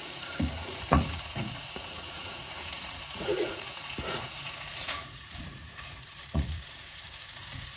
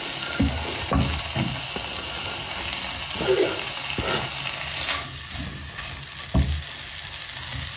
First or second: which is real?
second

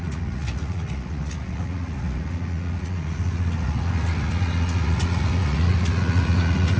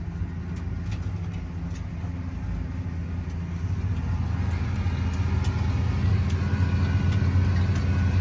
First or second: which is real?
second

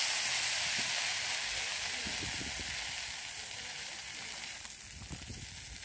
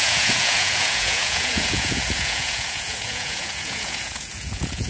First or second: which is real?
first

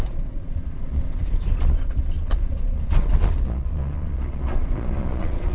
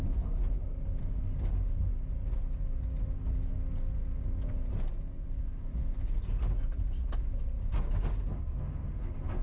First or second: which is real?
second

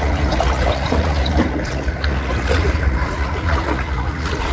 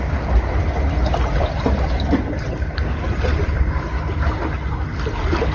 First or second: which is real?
second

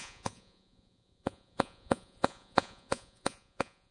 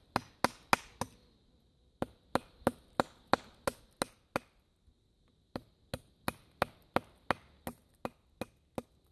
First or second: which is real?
second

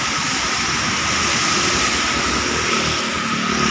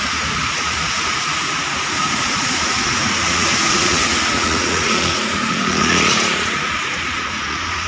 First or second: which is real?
first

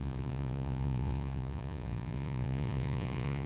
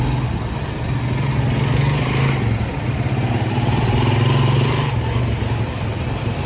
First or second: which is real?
second